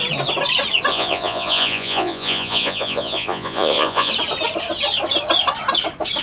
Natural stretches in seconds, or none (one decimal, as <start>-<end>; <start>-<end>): 0.0-0.9; 4.1-6.2